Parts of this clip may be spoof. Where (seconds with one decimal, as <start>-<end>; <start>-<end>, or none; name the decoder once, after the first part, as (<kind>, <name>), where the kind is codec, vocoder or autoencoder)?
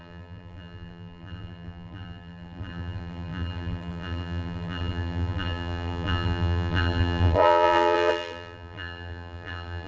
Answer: 0.0-9.9 (vocoder, BigVGAN v2)